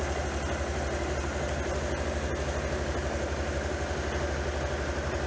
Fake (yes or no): no